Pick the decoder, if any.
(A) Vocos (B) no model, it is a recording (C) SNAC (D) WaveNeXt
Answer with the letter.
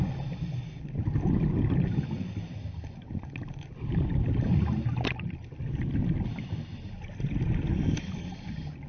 B